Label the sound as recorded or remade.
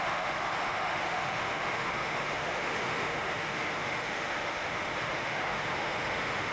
remade